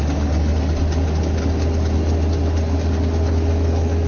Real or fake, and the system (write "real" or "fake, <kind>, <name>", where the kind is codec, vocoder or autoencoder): real